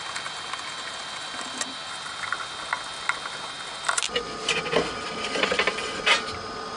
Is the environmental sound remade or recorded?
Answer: recorded